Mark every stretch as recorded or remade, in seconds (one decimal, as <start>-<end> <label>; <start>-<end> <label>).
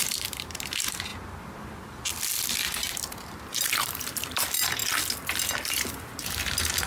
0.0-1.1 remade; 1.1-2.6 recorded; 2.6-4.8 remade; 4.8-6.2 recorded; 6.2-6.9 remade